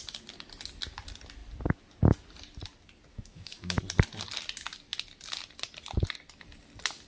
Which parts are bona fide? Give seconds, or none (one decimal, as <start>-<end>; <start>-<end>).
0.0-3.1; 3.8-7.1